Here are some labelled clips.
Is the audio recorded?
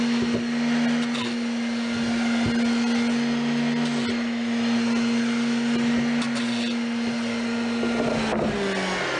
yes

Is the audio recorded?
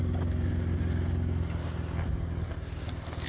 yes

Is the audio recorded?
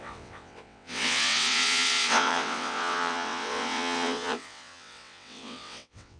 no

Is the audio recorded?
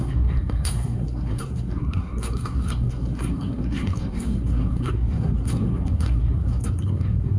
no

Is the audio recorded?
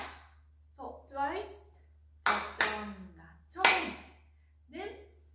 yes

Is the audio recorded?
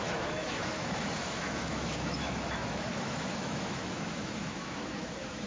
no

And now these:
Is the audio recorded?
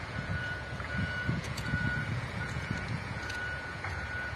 no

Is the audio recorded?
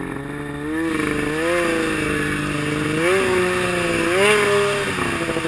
yes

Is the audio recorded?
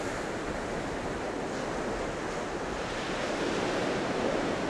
yes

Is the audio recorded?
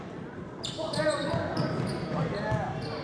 yes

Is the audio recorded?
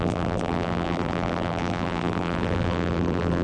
no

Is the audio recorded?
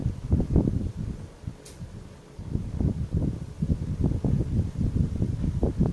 yes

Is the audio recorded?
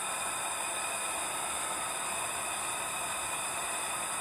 yes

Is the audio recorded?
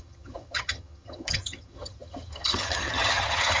no